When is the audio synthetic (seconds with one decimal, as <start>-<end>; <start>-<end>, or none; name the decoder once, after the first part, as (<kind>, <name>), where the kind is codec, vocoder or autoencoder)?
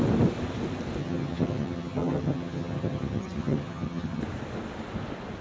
1.0-4.2 (vocoder, HiFi-GAN)